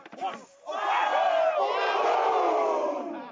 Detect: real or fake real